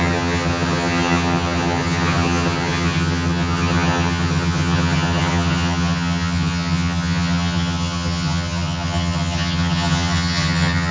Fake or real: fake